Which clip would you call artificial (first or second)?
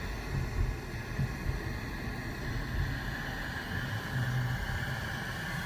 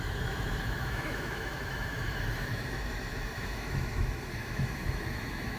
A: second